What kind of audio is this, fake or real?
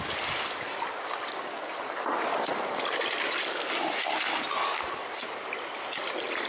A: real